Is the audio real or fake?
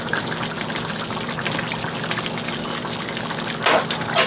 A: real